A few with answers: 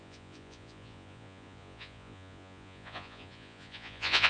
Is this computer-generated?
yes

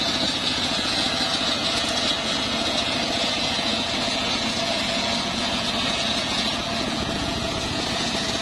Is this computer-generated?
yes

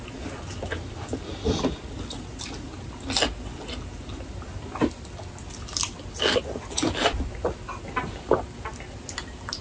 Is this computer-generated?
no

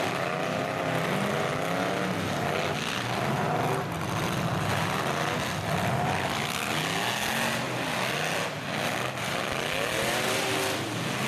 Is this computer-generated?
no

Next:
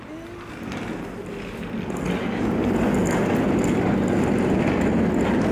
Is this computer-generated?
no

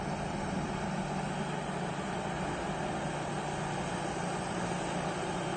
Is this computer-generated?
no